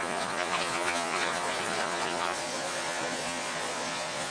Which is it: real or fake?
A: fake